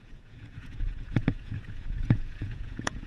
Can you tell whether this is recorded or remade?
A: remade